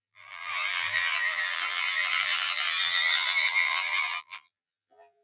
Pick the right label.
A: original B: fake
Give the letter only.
B